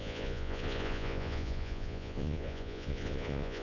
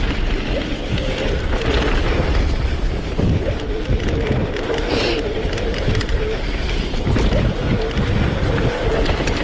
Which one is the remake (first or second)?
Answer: first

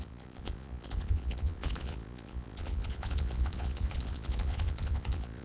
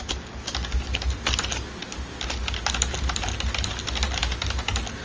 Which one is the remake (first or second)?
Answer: first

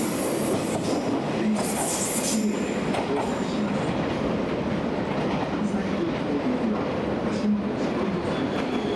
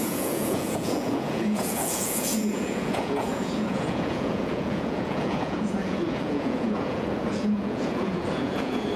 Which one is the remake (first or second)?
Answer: second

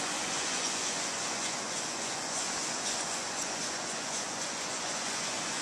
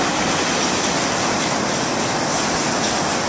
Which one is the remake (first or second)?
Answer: first